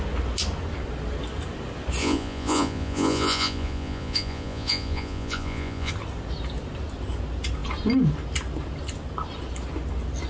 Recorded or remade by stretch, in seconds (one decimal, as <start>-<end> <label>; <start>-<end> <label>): 0.0-2.0 recorded; 2.0-5.9 remade; 5.9-10.3 recorded

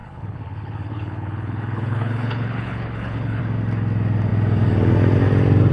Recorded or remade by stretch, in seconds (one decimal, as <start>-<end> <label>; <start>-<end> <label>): 0.0-3.4 remade; 3.4-5.7 recorded

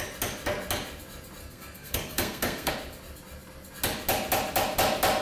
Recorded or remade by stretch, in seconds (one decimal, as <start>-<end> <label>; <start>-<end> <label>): 0.0-1.4 recorded; 1.4-2.7 remade; 2.7-5.2 recorded

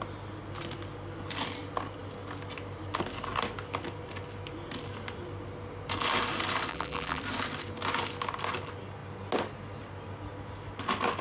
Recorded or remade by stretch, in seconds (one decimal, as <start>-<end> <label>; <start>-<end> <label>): 0.0-6.7 recorded; 6.7-7.2 remade; 7.2-11.2 recorded

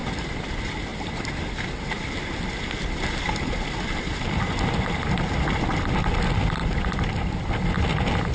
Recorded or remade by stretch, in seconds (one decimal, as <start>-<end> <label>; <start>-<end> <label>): 0.0-6.6 recorded; 6.6-7.5 remade; 7.5-8.3 recorded